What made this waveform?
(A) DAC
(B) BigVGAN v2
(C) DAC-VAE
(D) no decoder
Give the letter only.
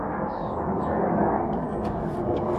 A